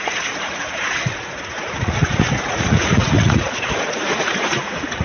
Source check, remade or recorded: remade